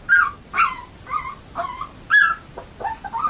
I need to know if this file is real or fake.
real